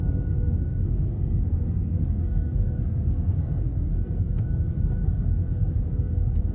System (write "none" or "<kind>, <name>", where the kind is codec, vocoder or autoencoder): codec, SNAC